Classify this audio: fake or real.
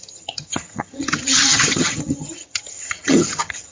fake